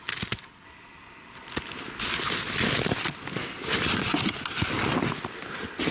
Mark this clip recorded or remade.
recorded